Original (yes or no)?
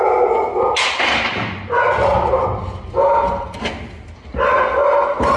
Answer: yes